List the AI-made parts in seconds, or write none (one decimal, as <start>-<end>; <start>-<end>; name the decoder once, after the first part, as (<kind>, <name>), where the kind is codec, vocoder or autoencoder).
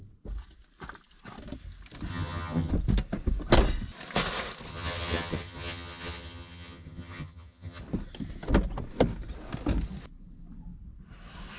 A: 2.1-2.7 (vocoder, HiFi-GAN); 4.7-7.8